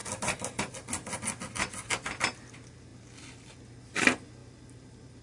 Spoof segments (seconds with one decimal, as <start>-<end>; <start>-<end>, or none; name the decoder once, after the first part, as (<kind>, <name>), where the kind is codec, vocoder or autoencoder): 4.4-5.2 (vocoder, BigVGAN v2)